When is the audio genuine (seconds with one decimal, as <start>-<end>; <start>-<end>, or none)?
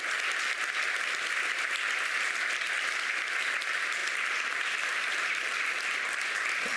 0.0-4.0; 5.8-6.8